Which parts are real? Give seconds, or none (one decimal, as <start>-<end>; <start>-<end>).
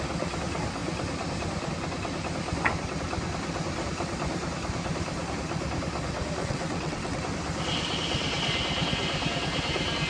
0.0-6.4; 7.2-10.1